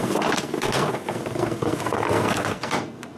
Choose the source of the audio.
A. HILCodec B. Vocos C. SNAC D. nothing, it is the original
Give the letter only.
C